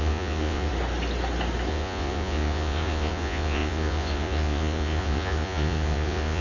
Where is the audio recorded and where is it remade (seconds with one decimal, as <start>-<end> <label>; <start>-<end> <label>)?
0.0-0.7 remade; 0.7-1.7 recorded; 1.7-6.4 remade